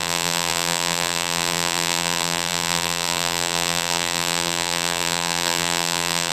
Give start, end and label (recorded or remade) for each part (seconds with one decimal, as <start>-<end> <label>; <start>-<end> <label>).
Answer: 0.0-6.3 remade